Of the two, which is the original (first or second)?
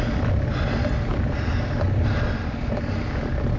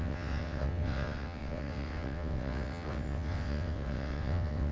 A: first